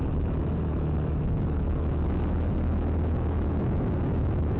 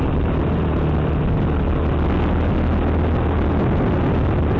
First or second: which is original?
second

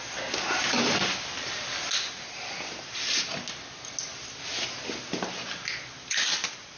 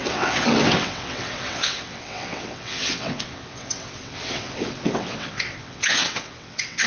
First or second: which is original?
first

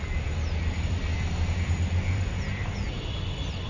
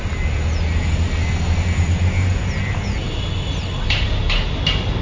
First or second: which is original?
second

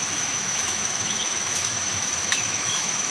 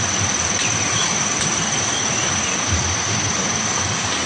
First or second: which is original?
second